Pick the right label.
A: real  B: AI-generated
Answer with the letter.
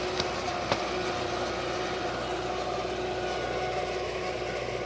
A